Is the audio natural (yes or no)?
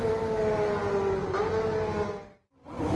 yes